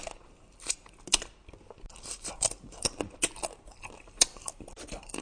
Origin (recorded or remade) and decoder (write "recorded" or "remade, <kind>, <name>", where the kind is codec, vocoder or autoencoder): recorded